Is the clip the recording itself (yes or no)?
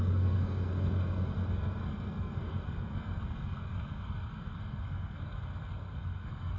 no